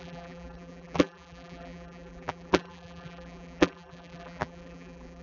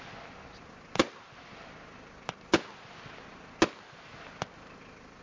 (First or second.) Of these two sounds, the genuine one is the second